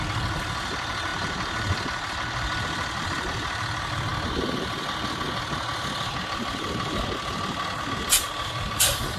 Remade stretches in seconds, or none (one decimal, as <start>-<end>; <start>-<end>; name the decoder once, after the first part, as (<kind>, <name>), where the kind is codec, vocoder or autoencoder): 0.0-1.1 (vocoder, BigVGAN v2); 2.6-4.1; 6.2-9.2